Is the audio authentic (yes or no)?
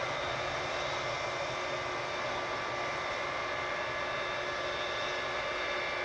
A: yes